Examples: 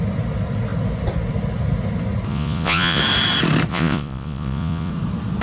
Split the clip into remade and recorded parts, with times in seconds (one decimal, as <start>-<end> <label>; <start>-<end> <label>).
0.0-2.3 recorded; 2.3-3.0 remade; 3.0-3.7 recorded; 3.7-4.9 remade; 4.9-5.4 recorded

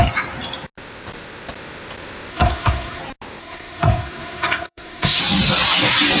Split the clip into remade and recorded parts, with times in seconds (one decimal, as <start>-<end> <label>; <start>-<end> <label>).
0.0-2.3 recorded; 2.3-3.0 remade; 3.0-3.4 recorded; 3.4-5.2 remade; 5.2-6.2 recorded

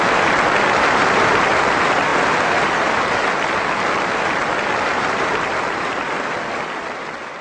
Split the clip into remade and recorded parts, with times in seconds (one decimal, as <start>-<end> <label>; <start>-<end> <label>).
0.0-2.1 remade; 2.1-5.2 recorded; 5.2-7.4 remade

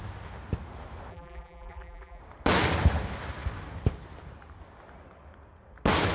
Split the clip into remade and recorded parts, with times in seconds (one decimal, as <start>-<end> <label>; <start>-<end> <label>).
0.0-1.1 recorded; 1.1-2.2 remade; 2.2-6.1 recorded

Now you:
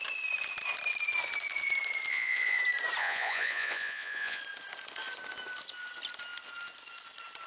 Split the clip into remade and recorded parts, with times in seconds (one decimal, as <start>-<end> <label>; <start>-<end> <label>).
0.0-2.1 recorded; 2.1-2.6 remade; 2.6-3.0 recorded; 3.0-4.4 remade; 4.4-7.5 recorded